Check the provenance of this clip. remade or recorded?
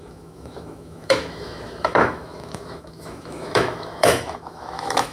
remade